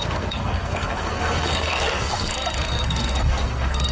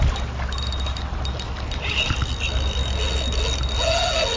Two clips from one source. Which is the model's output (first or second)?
first